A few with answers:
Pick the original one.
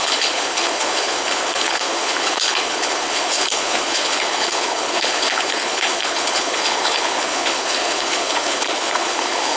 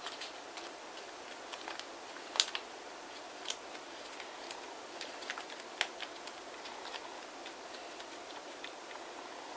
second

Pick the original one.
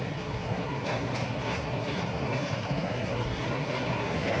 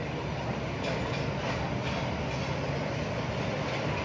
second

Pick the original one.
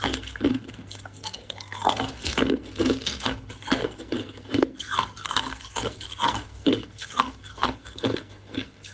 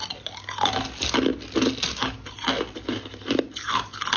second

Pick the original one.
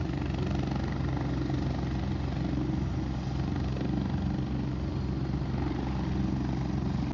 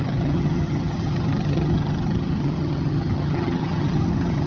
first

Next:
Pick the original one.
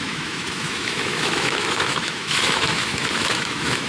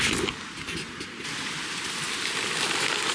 second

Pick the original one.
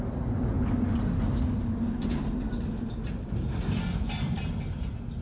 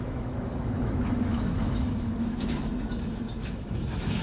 first